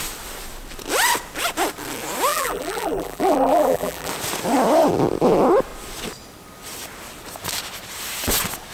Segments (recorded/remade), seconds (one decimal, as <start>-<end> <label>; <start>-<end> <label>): 0.0-2.3 recorded; 2.3-4.1 remade; 4.1-8.7 recorded

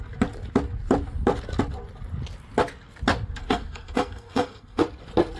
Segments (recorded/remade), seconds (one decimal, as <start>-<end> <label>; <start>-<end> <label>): 0.0-3.4 recorded; 3.4-4.8 remade; 4.8-5.4 recorded

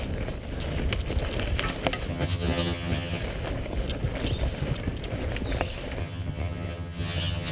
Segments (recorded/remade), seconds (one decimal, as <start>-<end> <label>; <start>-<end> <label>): 0.0-2.1 recorded; 2.1-3.2 remade; 3.2-6.0 recorded; 6.0-7.5 remade

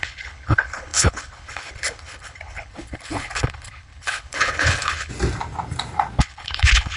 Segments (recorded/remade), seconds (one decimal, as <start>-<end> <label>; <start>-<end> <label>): 0.0-5.1 remade; 5.1-6.2 recorded; 6.2-7.0 remade

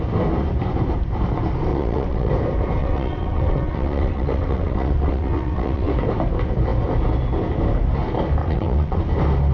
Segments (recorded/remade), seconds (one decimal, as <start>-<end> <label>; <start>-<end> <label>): 0.0-1.7 recorded; 1.7-2.3 remade; 2.3-2.8 recorded; 2.8-5.9 remade; 5.9-8.4 recorded; 8.4-9.0 remade; 9.0-9.5 recorded

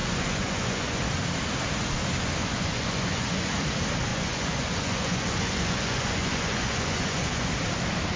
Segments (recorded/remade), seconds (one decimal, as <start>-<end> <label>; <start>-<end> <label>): 0.0-1.0 remade; 1.0-2.4 recorded; 2.4-3.5 remade; 3.5-4.1 recorded; 4.1-7.5 remade; 7.5-8.2 recorded

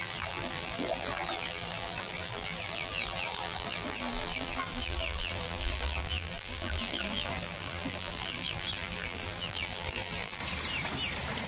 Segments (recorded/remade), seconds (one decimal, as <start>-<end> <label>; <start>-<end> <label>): 0.0-10.4 remade; 10.4-11.5 recorded